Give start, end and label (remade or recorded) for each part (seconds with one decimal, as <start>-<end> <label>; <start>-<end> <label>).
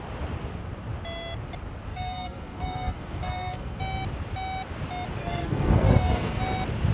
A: 0.0-1.9 recorded; 1.9-3.8 remade; 3.8-5.2 recorded; 5.2-6.4 remade; 6.4-6.9 recorded